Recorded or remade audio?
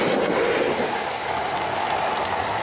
recorded